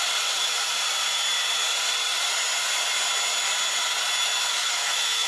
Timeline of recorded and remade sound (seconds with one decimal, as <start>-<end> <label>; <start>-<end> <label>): 0.0-4.2 recorded; 4.2-5.3 remade